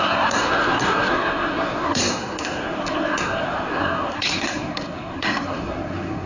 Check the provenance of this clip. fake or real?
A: fake